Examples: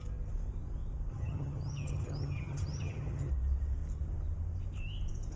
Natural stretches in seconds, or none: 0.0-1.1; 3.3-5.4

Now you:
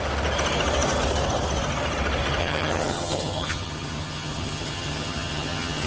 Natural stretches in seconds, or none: 0.0-2.4

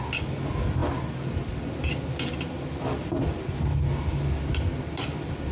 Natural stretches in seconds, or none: 0.0-5.5